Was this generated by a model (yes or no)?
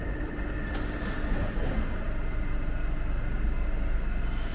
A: no